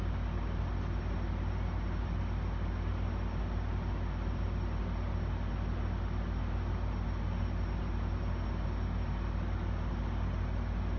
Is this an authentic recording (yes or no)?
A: yes